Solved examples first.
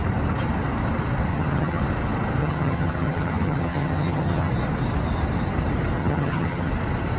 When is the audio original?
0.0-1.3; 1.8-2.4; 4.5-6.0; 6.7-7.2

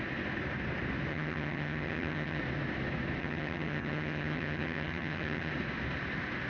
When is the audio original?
0.0-1.1; 2.4-3.2; 5.5-6.5

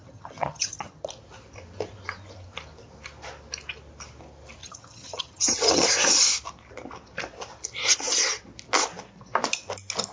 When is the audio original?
1.1-4.6; 5.9-10.1

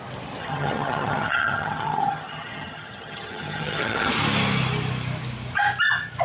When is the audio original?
0.0-0.4; 4.1-6.2

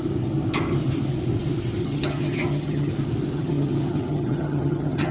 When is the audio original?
0.0-1.8; 2.9-3.3

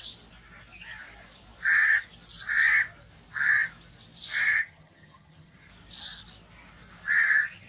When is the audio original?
0.0-4.5; 5.7-7.7

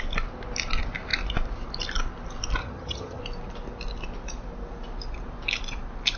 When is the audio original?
0.0-2.6; 3.2-6.2

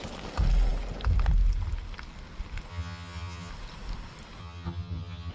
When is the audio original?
0.0-2.7; 3.5-4.4